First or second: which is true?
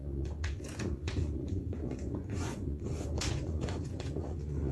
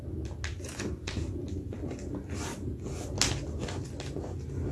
second